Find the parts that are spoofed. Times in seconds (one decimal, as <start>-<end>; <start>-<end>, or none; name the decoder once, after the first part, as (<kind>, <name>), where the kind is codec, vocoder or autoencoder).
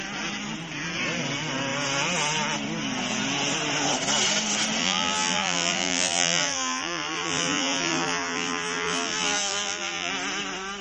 4.8-10.1 (vocoder, BigVGAN v2)